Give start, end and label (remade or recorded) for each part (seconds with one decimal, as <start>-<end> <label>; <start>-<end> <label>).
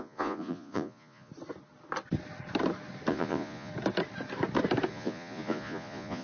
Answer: 0.0-1.3 remade; 1.3-3.1 recorded; 3.1-3.7 remade; 3.7-4.9 recorded; 4.9-6.2 remade